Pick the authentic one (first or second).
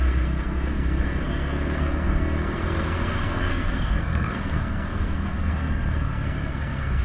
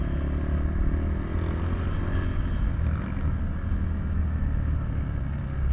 second